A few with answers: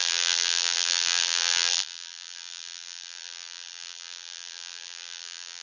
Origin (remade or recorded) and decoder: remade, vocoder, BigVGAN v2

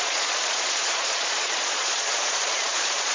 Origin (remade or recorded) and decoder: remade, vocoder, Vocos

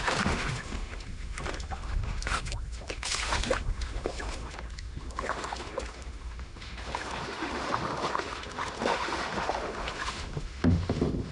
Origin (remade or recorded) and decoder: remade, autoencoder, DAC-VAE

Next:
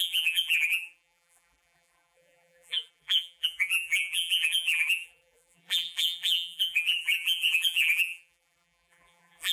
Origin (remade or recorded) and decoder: remade, vocoder, BigVGAN v2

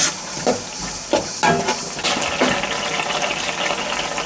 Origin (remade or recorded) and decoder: recorded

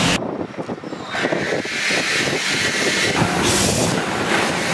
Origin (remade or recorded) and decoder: recorded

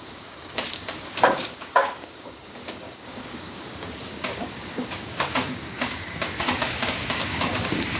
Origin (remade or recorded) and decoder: remade, codec, DAC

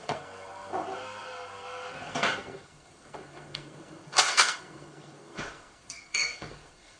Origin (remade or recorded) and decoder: remade, codec, SNAC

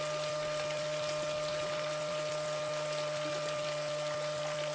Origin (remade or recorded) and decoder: recorded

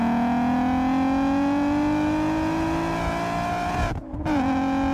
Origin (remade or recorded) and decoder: recorded